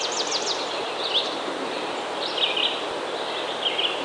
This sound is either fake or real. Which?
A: real